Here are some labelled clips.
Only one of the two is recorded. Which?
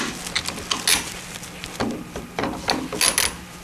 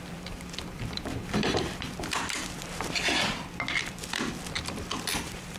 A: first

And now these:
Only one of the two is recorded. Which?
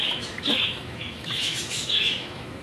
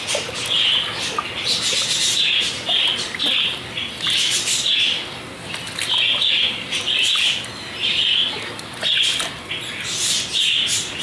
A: second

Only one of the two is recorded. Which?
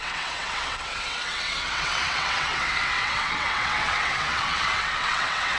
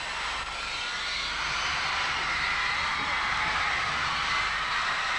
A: second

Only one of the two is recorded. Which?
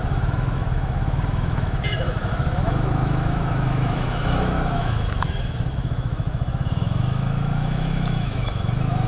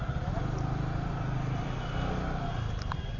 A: second